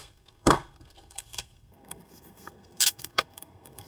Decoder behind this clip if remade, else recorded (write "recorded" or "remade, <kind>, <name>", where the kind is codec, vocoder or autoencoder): remade, codec, SNAC